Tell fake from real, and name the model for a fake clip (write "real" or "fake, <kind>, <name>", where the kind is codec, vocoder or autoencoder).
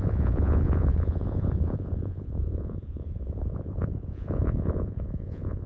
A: fake, vocoder, Vocos